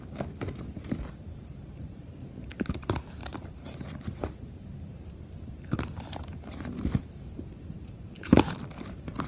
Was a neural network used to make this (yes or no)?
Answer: yes